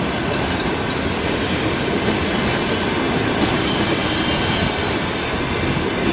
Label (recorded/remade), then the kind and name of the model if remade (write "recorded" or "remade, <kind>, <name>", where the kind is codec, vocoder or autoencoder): recorded